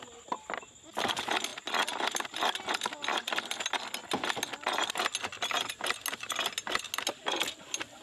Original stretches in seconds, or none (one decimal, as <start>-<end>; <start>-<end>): 0.0-8.0